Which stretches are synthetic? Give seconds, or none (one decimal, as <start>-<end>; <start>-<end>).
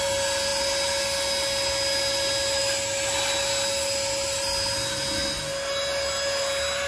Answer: none